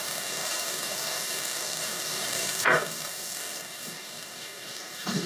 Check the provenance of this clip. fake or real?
fake